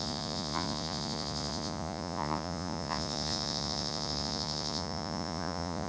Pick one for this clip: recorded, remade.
remade